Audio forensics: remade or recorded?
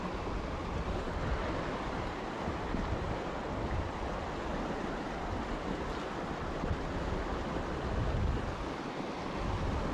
recorded